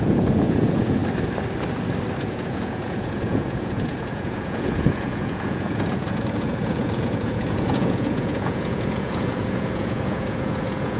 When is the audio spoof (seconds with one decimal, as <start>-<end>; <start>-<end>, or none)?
0.0-1.0; 2.2-11.0